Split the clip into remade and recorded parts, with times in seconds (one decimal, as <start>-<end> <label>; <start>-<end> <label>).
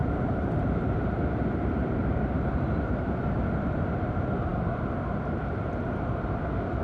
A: 0.0-4.1 remade; 4.1-6.8 recorded